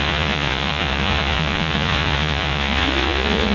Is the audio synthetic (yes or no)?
yes